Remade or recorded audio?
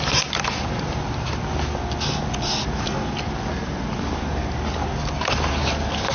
recorded